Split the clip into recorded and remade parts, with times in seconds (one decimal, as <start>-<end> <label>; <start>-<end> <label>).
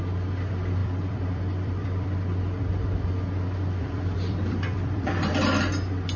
0.0-0.8 recorded; 0.8-3.1 remade; 3.1-3.8 recorded; 3.8-5.3 remade; 5.3-6.2 recorded